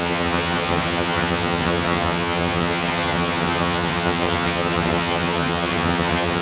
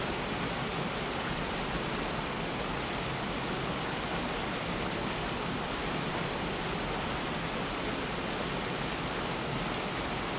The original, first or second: second